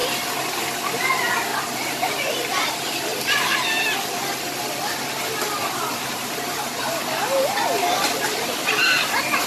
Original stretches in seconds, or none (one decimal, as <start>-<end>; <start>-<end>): 0.0-0.9; 3.1-7.4